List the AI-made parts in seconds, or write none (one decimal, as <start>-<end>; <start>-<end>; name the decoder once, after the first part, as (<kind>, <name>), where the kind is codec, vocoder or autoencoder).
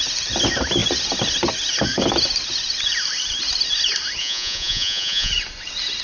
4.2-5.3 (vocoder, Vocos)